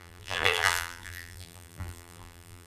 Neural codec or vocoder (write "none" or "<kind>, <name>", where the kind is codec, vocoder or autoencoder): vocoder, BigVGAN v2